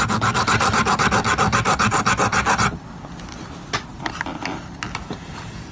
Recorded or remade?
recorded